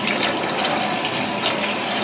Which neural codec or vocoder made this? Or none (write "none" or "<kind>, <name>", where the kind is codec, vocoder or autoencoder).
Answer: none